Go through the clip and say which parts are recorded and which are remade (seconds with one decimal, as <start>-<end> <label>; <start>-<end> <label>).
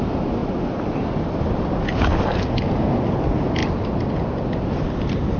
0.0-5.4 recorded